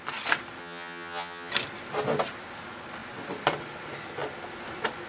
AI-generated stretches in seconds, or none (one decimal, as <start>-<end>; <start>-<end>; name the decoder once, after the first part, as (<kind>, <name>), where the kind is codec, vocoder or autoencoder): 0.6-1.5 (vocoder, HiFi-GAN)